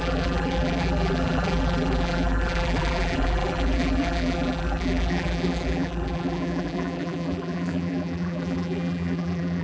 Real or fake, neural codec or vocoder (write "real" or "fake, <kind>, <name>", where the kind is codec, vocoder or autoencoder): fake, vocoder, BigVGAN v2